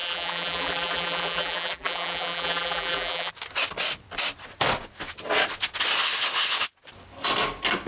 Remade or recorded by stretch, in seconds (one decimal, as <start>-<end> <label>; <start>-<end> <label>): 0.0-3.3 remade; 3.3-7.9 recorded